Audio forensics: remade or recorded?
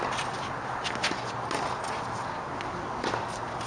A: recorded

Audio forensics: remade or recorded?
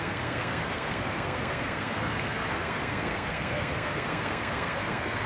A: remade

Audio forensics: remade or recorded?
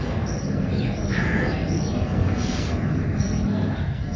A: remade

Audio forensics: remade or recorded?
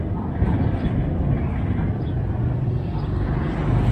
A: recorded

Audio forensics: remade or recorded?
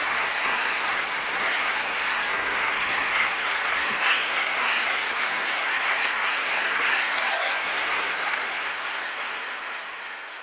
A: remade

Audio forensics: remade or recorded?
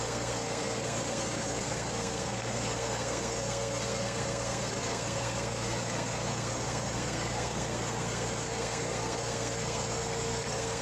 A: remade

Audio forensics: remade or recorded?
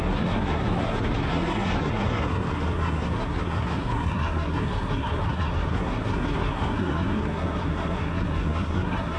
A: remade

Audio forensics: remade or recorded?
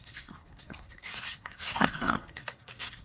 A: remade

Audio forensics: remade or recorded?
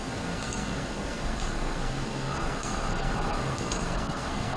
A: remade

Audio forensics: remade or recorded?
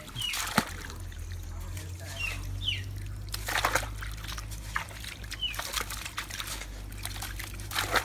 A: recorded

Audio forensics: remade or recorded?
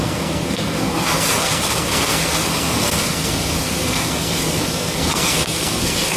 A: remade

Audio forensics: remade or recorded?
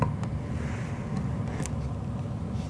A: recorded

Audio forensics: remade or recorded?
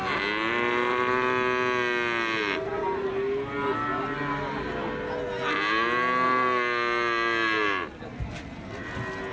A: recorded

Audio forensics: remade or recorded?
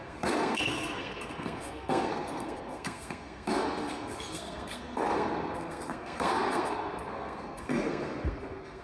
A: remade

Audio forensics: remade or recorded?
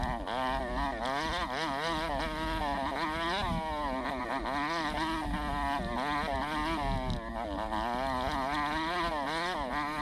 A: recorded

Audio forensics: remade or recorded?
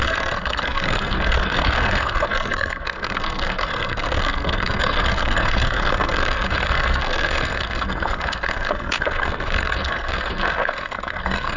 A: remade